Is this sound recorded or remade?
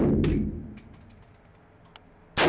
recorded